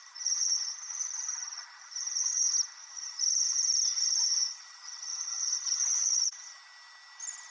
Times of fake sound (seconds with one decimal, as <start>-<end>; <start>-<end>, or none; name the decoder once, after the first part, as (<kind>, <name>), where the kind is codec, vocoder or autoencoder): 0.0-2.3 (vocoder, Vocos); 2.8-6.6